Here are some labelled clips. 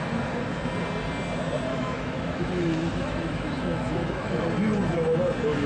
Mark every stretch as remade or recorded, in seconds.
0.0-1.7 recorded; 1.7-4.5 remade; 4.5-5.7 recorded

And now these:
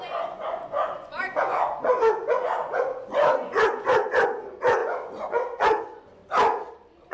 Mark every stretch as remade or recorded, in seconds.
0.0-6.2 remade; 6.2-7.1 recorded